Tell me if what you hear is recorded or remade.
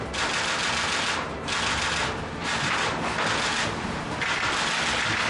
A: recorded